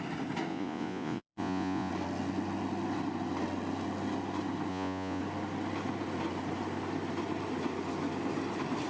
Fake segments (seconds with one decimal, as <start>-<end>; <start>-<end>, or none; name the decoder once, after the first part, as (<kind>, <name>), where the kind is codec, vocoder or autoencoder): 0.5-1.9 (vocoder, Vocos); 4.7-5.2